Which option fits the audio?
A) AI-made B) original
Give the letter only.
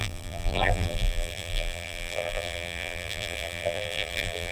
A